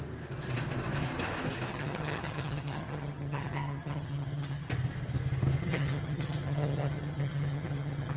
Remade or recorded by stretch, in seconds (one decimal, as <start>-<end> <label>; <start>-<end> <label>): 0.0-1.7 recorded; 1.7-4.7 remade; 4.7-5.6 recorded; 5.6-8.2 remade